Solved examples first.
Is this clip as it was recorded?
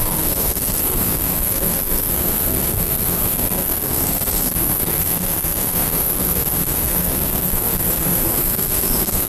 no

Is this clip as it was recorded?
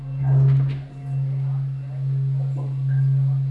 yes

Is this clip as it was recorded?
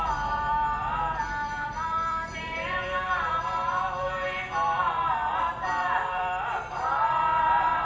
no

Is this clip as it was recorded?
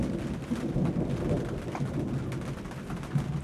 yes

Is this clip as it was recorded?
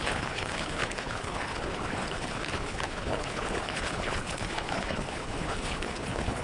no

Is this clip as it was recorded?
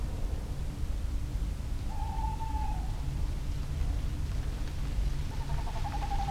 yes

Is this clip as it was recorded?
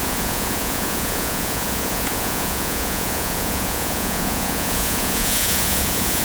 no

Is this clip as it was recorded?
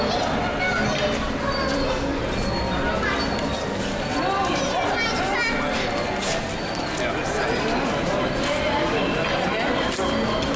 yes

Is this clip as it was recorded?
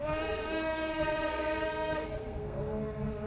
no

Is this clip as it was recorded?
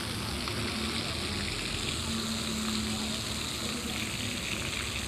yes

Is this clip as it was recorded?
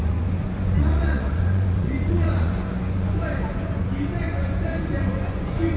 no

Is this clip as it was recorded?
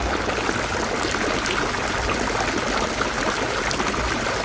yes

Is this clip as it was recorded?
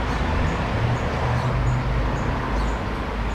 yes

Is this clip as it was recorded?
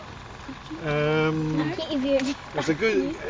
yes